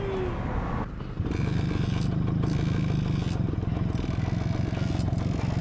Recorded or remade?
recorded